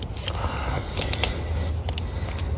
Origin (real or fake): real